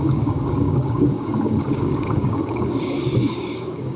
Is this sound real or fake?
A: fake